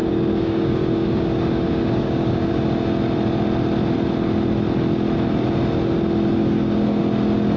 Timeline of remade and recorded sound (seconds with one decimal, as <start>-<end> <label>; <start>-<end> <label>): 0.0-2.5 remade; 2.5-6.4 recorded; 6.4-7.0 remade; 7.0-7.6 recorded